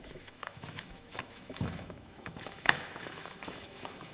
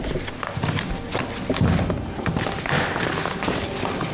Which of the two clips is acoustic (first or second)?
second